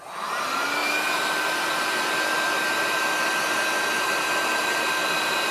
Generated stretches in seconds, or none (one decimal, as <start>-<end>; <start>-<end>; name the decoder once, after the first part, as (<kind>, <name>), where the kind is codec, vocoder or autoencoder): 4.5-5.5 (vocoder, BigVGAN v2)